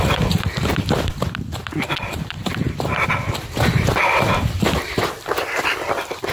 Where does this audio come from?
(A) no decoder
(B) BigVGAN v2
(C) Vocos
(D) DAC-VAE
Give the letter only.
B